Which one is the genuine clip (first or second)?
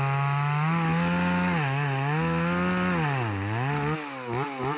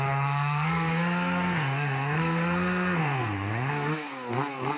first